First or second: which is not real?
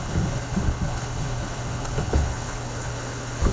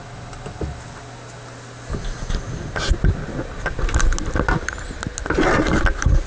first